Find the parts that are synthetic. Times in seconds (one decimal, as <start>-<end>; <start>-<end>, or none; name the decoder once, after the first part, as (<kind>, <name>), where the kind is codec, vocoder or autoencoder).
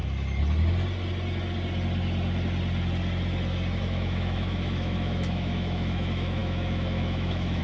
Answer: 3.8-7.6 (autoencoder, DAC-VAE)